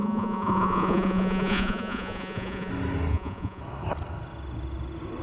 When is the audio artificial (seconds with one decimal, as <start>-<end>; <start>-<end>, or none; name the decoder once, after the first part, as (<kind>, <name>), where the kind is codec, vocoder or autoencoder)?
0.0-2.7 (vocoder, Vocos); 3.1-3.6